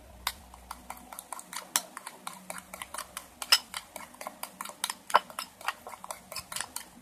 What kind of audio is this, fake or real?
real